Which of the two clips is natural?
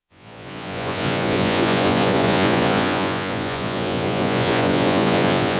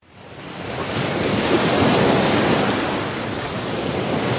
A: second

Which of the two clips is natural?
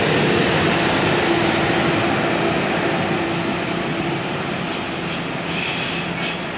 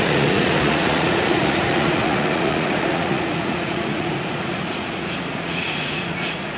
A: first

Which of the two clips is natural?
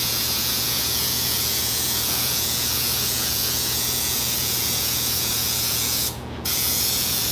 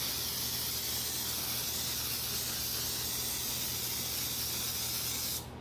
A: second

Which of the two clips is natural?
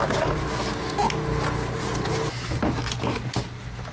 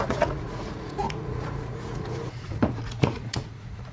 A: first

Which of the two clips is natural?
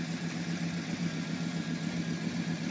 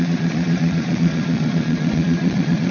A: first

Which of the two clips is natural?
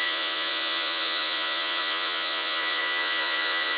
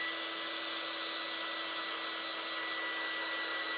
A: second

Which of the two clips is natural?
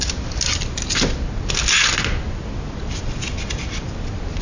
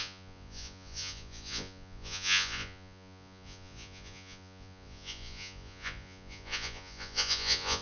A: first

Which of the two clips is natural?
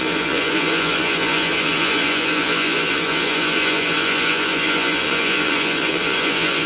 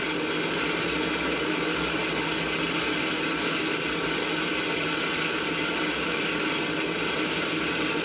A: second